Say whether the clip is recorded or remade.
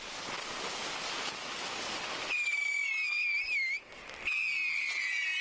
recorded